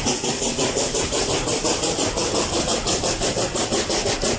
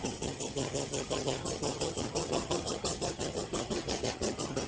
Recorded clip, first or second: first